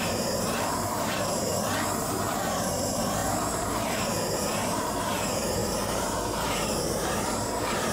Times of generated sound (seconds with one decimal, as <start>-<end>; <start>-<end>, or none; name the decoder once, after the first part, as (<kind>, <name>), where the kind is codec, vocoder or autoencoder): 0.0-1.5 (vocoder, BigVGAN v2); 2.1-7.9